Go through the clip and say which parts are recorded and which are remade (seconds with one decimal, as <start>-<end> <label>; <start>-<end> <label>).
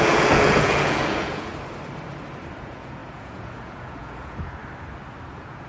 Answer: 0.0-1.5 remade; 1.5-2.6 recorded; 2.6-4.6 remade; 4.6-5.3 recorded; 5.3-5.7 remade